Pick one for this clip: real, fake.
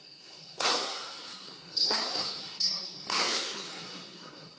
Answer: fake